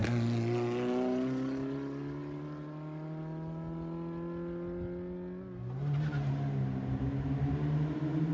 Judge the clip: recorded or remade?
recorded